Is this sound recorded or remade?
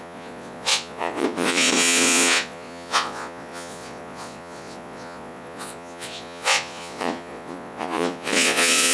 remade